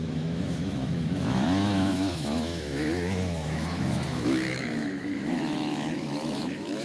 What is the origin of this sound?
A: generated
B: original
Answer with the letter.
A